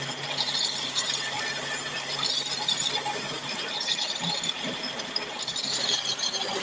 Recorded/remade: remade